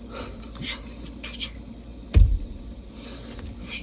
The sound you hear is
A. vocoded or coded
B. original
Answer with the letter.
B